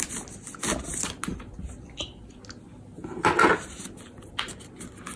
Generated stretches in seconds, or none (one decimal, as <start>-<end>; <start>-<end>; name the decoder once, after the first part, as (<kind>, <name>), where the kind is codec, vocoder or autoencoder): none